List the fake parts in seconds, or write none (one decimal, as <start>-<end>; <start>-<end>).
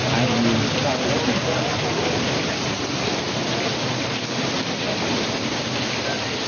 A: none